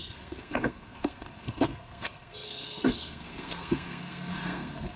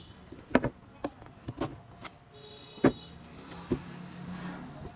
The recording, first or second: second